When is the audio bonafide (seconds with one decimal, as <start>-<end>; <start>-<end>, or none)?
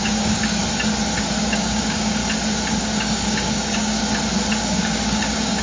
0.6-1.4; 2.2-2.8; 4.0-4.6